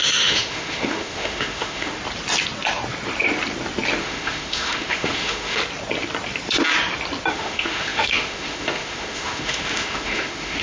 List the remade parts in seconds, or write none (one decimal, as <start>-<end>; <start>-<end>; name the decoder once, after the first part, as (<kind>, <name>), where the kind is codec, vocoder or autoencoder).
0.0-1.9 (autoencoder, DAC-VAE); 4.0-5.6; 7.3-10.6